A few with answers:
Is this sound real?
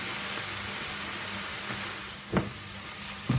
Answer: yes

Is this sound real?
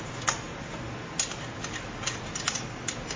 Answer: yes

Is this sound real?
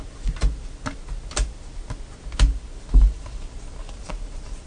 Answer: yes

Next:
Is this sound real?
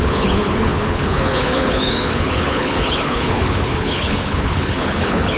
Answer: no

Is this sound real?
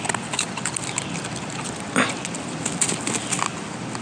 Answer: yes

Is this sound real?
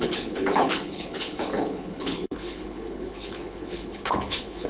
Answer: no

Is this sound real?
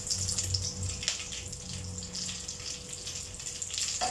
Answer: yes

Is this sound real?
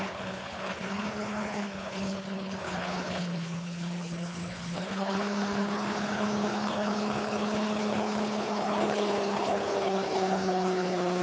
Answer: no